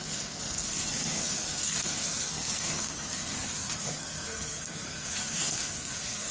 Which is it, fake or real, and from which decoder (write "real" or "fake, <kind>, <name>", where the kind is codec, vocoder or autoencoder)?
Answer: fake, codec, SNAC